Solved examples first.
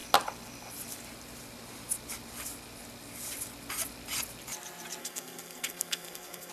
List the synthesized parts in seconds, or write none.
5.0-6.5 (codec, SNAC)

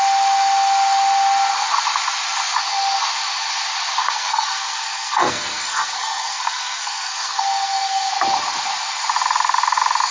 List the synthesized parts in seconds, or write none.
4.0-8.1 (codec, SNAC)